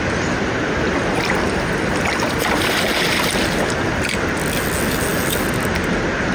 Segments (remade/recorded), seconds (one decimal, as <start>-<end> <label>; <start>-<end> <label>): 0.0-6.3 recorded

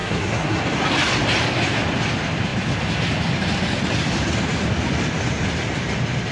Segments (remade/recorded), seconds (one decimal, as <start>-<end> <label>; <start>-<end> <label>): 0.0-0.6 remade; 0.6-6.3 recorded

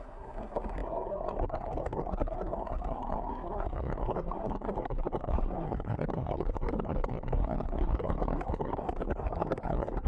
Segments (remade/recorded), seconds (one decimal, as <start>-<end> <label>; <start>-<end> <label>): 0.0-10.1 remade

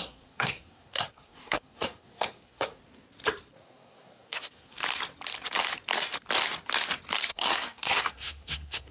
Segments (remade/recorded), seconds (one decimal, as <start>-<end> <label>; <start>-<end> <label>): 0.0-2.8 remade; 2.8-3.6 recorded; 3.6-4.8 remade; 4.8-7.3 recorded; 7.3-8.9 remade

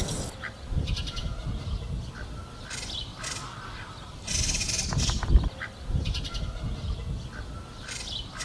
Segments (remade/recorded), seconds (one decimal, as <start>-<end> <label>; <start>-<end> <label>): 0.0-8.4 recorded